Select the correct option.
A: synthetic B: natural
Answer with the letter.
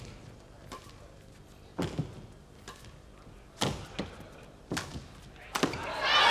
B